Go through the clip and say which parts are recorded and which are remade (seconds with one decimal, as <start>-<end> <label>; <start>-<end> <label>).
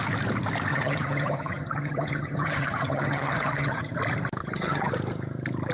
0.0-0.7 recorded; 0.7-3.9 remade; 3.9-4.4 recorded; 4.4-4.9 remade; 4.9-5.7 recorded